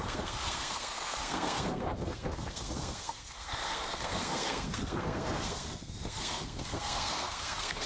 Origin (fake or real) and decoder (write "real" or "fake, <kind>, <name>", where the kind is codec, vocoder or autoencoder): fake, codec, SNAC